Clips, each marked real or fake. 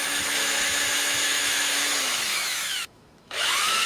fake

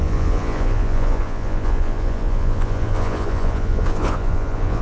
fake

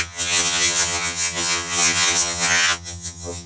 fake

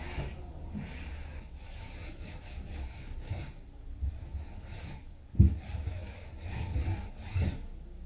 fake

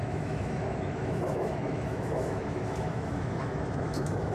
fake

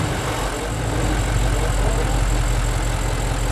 real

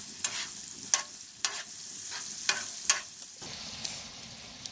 real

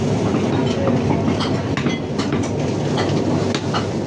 real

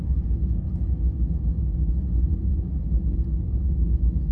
fake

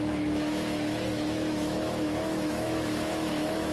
fake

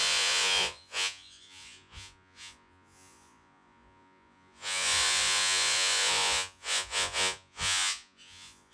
fake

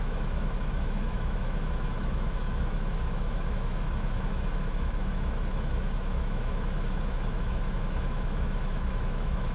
fake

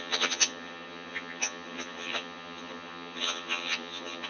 fake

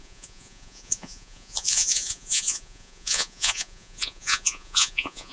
fake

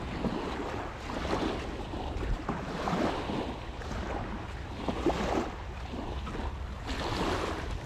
real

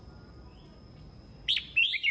real